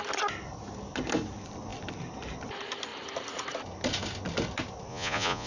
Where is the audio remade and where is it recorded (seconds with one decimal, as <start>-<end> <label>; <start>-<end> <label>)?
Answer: 0.0-4.9 recorded; 4.9-5.5 remade